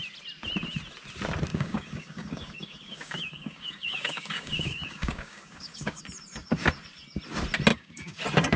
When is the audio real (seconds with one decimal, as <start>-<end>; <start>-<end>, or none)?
0.0-1.5; 6.0-7.7; 8.2-8.6